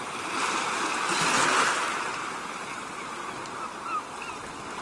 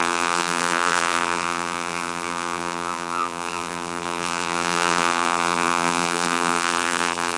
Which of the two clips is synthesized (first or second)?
second